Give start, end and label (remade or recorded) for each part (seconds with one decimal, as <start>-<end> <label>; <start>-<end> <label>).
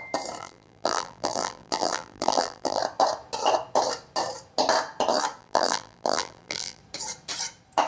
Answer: 0.0-0.4 recorded; 0.4-2.8 remade; 2.8-5.4 recorded; 5.4-6.8 remade; 6.8-7.9 recorded